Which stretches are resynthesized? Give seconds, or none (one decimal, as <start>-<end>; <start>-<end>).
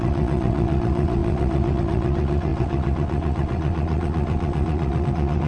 0.0-5.5